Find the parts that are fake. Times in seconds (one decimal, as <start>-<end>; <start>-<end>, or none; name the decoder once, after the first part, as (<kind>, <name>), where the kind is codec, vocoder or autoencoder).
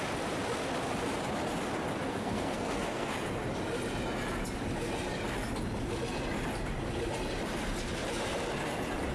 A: 2.1-3.1 (codec, SNAC)